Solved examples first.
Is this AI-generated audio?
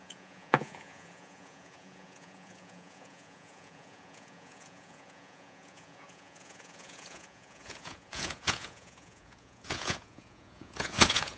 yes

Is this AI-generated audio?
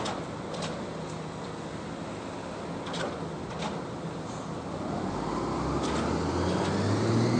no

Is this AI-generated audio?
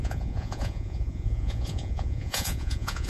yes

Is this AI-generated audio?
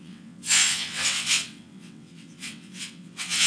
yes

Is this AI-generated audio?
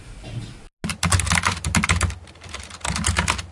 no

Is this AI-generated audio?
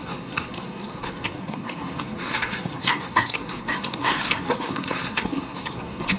yes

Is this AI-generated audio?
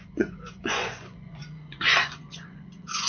yes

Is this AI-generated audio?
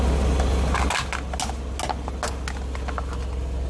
no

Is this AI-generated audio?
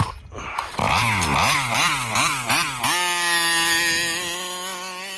no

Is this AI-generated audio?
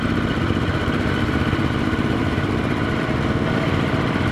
yes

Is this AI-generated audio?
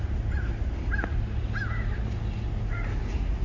no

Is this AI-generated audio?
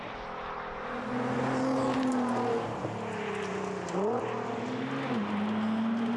no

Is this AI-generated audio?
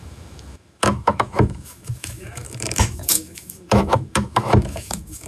yes